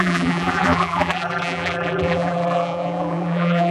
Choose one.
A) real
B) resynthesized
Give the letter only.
B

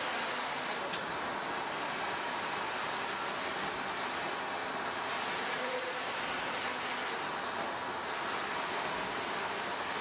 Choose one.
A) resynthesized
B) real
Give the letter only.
B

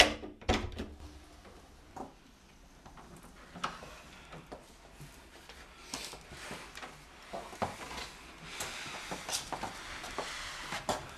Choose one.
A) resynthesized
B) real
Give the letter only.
B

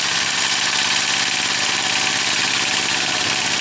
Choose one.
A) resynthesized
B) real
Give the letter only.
B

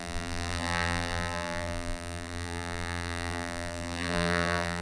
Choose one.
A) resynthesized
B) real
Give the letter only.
A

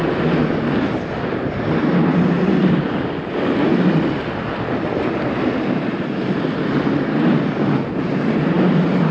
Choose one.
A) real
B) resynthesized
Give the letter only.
A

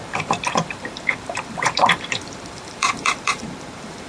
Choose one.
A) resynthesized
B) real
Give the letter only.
A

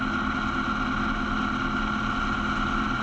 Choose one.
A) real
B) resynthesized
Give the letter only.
A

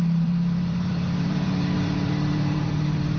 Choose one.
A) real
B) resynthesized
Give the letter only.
B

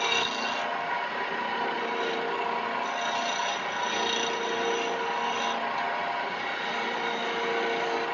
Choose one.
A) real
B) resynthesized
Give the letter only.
A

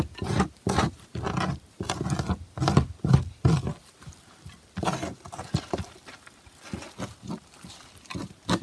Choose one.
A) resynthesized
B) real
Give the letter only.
B